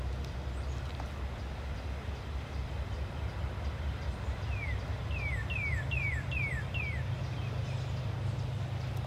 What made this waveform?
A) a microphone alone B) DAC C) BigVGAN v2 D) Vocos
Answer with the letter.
A